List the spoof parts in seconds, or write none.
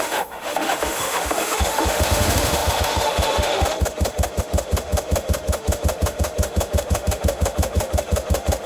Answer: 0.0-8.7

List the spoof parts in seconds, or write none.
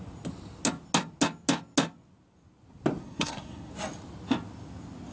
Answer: 3.0-3.7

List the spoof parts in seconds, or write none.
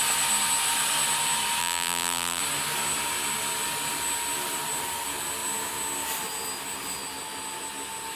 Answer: 1.6-2.4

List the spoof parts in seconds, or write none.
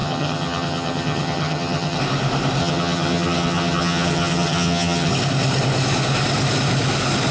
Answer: 0.0-2.0; 2.6-5.1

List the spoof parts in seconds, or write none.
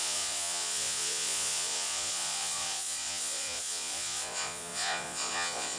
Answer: 0.0-5.8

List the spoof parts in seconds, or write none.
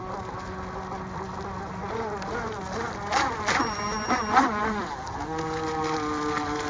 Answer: none